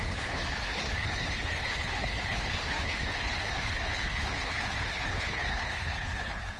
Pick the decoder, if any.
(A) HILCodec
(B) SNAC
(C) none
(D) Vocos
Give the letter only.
A